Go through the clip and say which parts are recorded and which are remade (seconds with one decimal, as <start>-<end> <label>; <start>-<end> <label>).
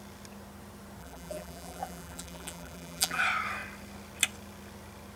0.0-1.0 recorded; 1.0-3.2 remade; 3.2-5.2 recorded